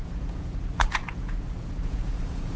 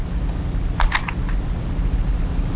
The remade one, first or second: first